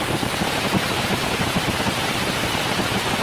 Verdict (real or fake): fake